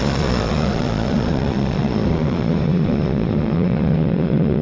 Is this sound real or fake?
fake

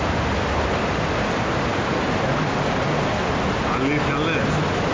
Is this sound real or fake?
real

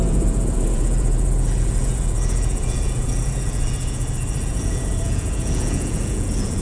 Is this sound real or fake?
fake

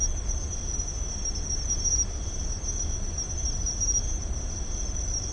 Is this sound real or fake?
real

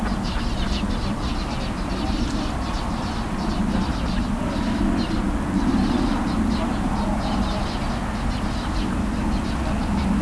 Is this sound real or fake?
real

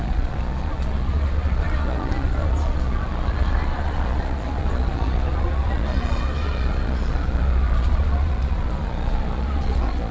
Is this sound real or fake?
fake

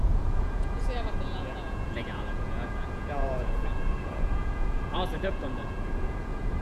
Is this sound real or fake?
fake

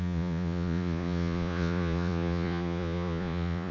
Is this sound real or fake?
fake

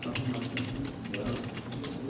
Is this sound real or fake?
real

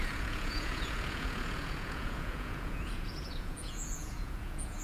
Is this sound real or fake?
fake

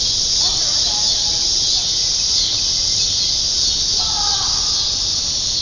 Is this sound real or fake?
real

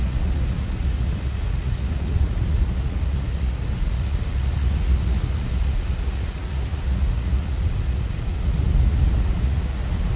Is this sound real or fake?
fake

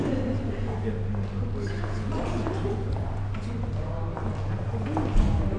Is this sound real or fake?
real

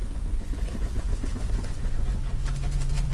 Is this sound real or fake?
fake